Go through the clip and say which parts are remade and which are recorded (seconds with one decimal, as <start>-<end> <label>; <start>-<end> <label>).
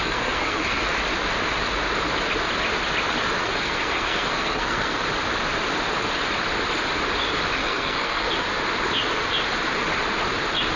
0.0-0.8 remade; 0.8-3.4 recorded; 3.4-5.0 remade; 5.0-7.6 recorded; 7.6-8.3 remade; 8.3-10.8 recorded